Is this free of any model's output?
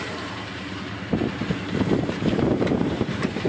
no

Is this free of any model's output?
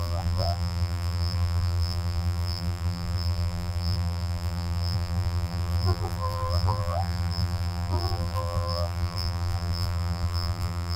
no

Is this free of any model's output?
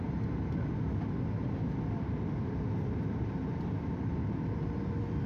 yes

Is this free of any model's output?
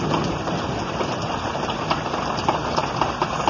no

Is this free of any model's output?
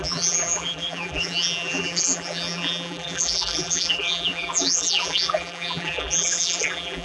no